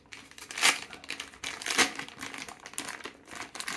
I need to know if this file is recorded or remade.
recorded